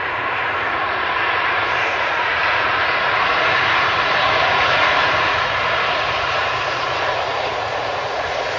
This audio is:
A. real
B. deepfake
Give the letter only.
B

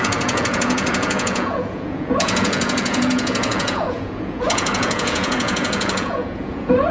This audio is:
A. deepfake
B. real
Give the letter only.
A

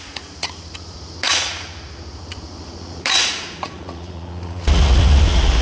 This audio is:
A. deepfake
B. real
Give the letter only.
A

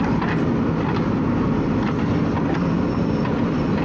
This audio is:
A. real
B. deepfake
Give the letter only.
A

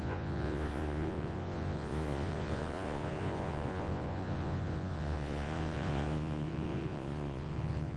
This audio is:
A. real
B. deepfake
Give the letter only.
B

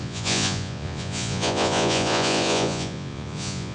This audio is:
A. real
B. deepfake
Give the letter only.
B